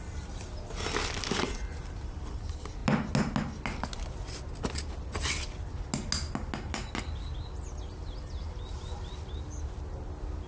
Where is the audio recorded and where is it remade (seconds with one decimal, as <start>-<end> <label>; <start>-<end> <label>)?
0.0-10.5 recorded